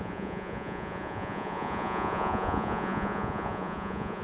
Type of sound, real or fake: fake